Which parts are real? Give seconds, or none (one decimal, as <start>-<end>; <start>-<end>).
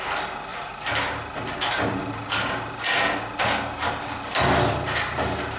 0.0-5.6